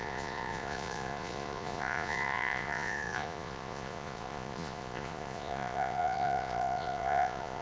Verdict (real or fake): fake